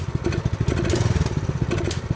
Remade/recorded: recorded